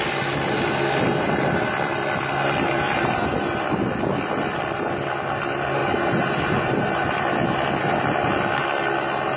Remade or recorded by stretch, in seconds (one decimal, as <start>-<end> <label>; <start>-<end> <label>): 0.0-9.4 recorded